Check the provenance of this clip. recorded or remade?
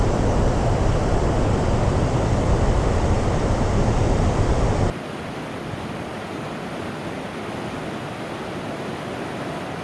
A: recorded